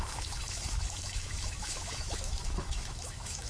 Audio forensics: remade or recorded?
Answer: remade